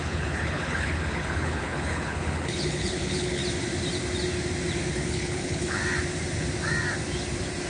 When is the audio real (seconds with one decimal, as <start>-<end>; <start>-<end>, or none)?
3.4-4.9; 5.8-7.7